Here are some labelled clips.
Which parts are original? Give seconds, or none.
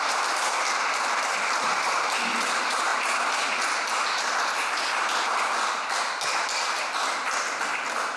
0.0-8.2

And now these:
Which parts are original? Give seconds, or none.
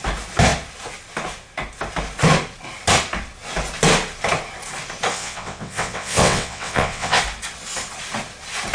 0.0-5.1; 7.2-8.7